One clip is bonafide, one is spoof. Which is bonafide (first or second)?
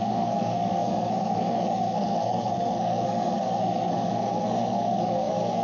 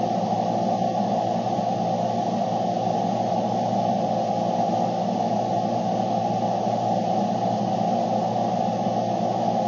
second